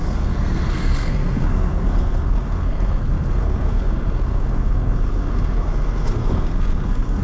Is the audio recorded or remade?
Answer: remade